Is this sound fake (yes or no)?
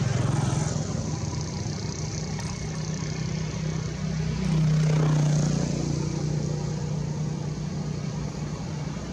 no